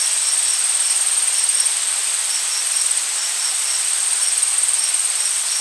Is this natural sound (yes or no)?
yes